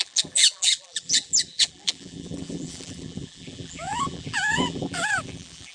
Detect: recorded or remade remade